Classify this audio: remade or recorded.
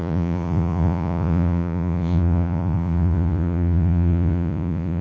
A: remade